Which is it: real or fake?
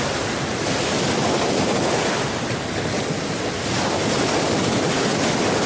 real